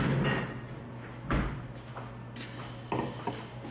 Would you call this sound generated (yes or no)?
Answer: no